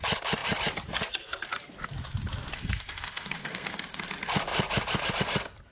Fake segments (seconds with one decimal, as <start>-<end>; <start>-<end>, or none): 2.5-3.9